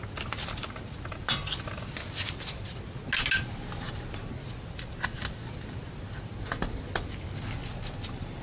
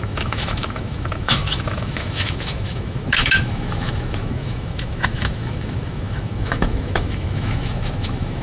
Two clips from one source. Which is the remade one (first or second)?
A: second